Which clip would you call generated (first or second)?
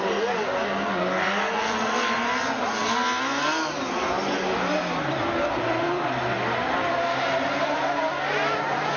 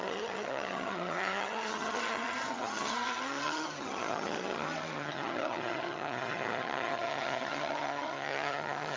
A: second